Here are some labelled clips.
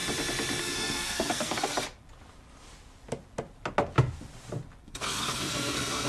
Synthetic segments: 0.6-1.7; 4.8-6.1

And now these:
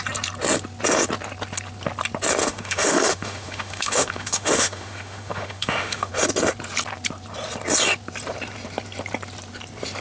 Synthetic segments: 2.4-6.1

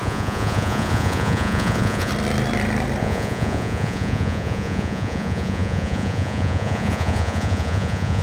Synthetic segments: 0.0-2.1; 3.0-8.2

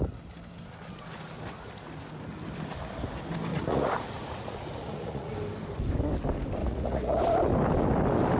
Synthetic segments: 3.5-5.3; 6.6-7.2

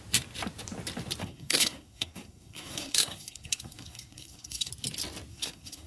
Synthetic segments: 1.2-4.7; 5.3-5.9

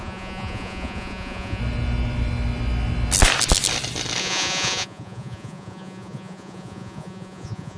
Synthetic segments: 0.0-1.6; 4.2-7.8

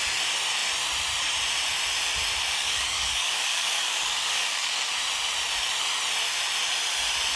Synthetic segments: 2.6-4.9

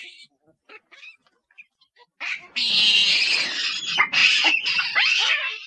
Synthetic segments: 4.2-4.8